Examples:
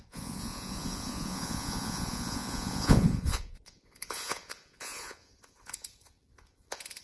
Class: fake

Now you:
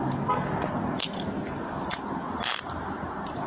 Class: real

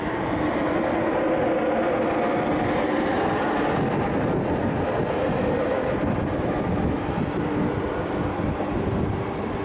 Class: real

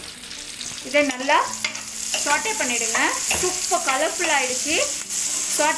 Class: real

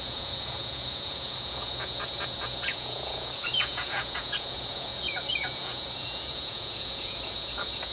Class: fake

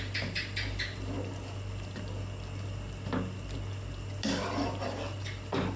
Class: real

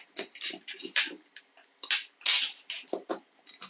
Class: real